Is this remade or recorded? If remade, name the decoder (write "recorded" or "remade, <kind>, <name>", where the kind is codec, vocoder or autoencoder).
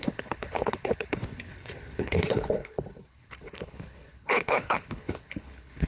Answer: remade, codec, HILCodec